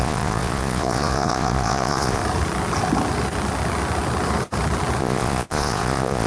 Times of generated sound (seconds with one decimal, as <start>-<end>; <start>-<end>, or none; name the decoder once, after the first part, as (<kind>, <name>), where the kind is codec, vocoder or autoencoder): 0.0-2.2 (vocoder, Vocos); 5.0-6.3